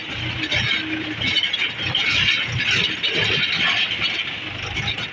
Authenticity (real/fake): real